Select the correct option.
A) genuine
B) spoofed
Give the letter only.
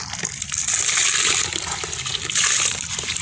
A